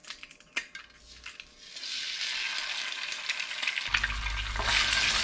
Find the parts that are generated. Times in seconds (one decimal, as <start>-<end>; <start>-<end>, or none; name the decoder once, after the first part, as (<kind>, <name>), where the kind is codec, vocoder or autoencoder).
none